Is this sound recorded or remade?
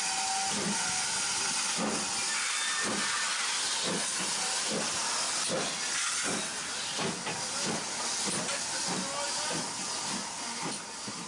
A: recorded